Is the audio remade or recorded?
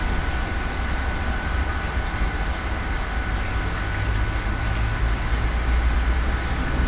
recorded